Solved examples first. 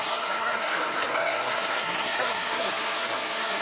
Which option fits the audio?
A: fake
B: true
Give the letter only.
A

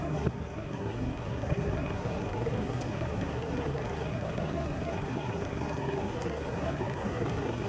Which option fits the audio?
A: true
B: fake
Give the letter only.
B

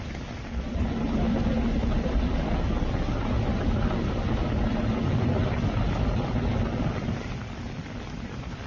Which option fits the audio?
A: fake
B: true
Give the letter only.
B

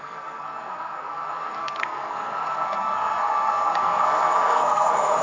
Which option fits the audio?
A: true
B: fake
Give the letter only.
B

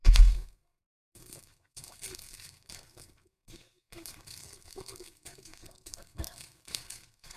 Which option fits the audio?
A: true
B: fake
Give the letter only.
B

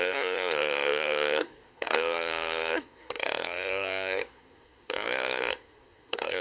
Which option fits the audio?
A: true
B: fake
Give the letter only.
B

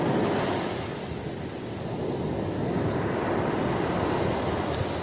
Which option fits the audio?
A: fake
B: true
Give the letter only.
B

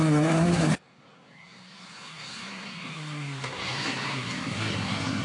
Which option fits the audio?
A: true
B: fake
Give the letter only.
B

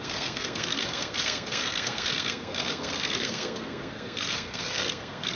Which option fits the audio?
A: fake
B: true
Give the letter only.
A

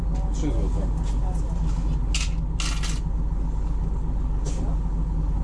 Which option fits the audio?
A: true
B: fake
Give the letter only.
A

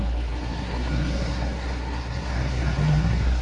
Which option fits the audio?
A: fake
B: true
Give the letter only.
A